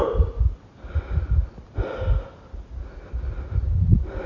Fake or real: real